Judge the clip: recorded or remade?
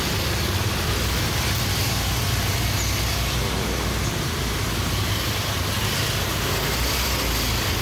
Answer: recorded